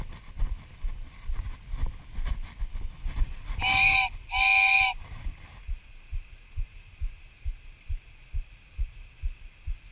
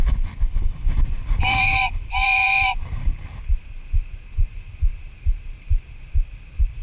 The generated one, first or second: second